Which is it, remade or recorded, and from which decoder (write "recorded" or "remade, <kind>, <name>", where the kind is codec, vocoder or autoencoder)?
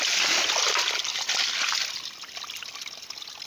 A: recorded